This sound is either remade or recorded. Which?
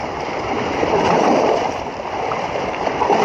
recorded